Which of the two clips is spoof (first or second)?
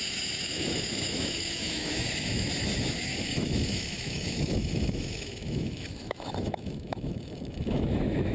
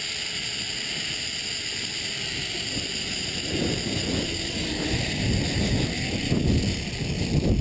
first